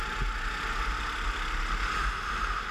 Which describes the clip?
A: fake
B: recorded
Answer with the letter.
B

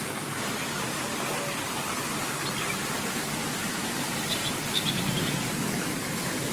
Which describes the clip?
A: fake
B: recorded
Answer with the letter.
B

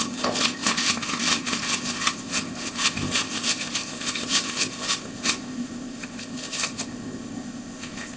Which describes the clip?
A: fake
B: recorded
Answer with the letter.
A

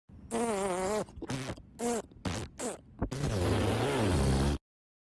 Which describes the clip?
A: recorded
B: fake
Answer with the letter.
A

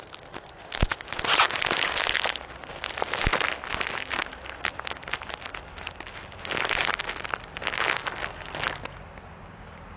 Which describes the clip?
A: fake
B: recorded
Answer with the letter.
B